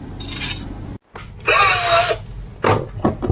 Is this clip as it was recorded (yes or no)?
yes